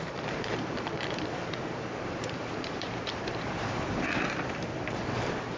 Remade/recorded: remade